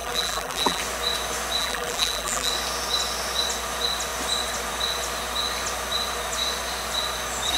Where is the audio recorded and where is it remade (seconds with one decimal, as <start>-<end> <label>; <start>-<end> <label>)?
0.0-0.8 remade; 0.8-1.6 recorded; 1.6-2.5 remade; 2.5-7.6 recorded